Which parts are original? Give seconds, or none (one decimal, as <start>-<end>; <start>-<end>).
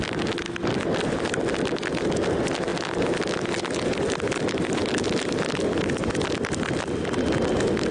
0.0-7.9